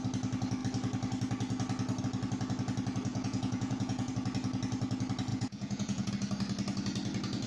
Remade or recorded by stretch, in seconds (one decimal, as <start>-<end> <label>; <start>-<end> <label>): 0.0-3.1 recorded; 3.1-4.1 remade; 4.1-5.3 recorded; 5.3-6.1 remade; 6.1-7.5 recorded